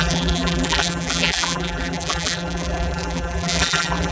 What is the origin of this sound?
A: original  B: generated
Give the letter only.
B